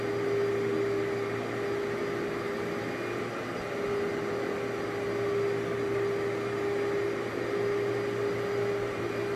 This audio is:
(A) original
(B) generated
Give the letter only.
A